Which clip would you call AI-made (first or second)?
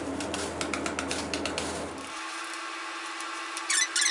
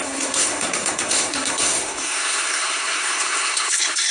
second